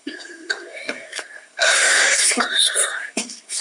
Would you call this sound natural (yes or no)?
no